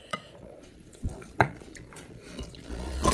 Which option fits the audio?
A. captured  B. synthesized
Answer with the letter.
B